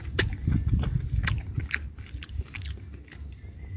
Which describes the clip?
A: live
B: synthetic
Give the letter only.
A